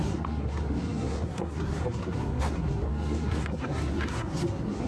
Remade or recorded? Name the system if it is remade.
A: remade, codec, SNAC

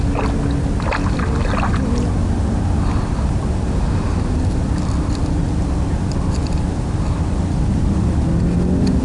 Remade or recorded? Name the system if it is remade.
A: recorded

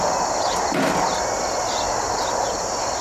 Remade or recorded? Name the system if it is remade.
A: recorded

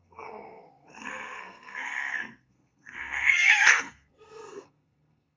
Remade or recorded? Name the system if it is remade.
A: remade, codec, SNAC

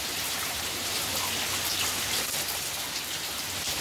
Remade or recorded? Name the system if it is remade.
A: recorded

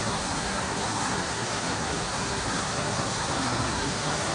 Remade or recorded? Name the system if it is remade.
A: remade, codec, SNAC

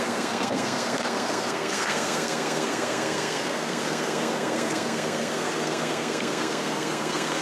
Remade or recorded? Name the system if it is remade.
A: remade, codec, SNAC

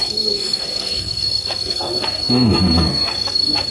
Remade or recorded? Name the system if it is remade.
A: remade, codec, SNAC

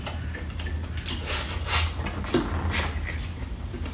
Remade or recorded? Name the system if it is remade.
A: recorded